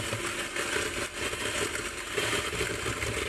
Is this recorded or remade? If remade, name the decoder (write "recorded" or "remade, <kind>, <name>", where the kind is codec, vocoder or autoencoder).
recorded